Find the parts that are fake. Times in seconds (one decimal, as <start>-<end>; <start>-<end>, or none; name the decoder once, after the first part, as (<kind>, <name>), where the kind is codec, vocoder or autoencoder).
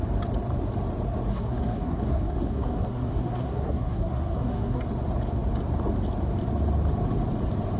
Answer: 1.3-4.8 (codec, SNAC)